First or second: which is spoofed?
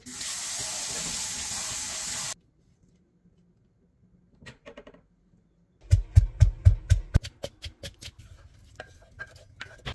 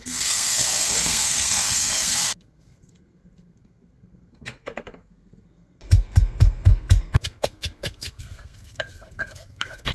second